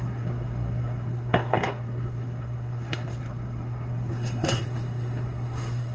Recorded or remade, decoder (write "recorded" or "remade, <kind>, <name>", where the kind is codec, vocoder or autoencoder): remade, codec, SNAC